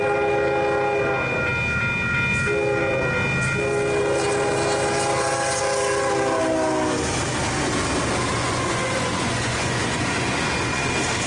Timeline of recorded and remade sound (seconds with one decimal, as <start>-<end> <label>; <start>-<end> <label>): 0.0-8.4 recorded; 8.4-10.9 remade; 10.9-11.3 recorded